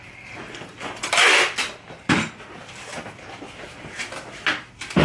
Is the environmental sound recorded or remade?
recorded